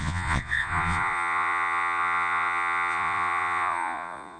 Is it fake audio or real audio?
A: fake